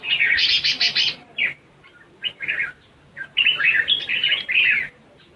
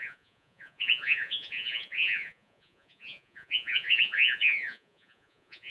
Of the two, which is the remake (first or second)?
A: second